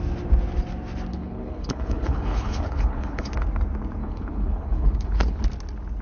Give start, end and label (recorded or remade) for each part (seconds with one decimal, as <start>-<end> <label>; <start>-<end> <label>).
0.0-1.1 recorded; 1.1-3.3 remade; 3.3-4.0 recorded; 4.0-5.4 remade; 5.4-6.0 recorded